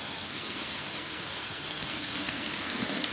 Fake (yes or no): yes